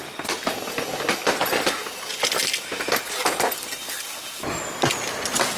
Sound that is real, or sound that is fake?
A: real